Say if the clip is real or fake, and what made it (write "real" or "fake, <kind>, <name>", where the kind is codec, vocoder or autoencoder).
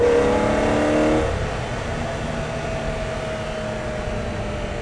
real